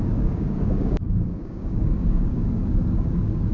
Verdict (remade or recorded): remade